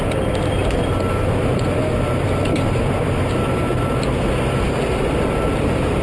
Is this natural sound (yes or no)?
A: yes